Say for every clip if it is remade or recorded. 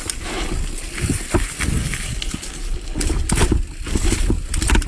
recorded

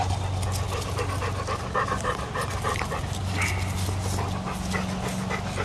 recorded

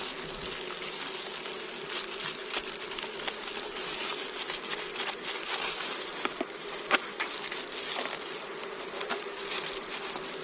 recorded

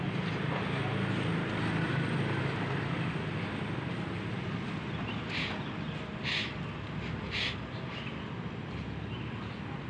recorded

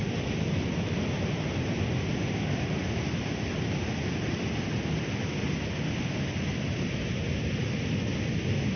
recorded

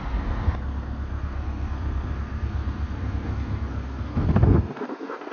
remade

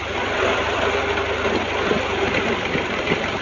remade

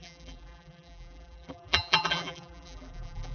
remade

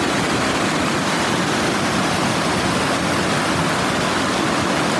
recorded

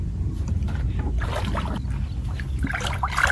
recorded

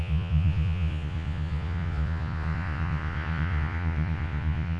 remade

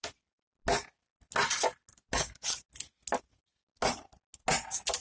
recorded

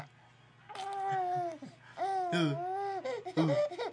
recorded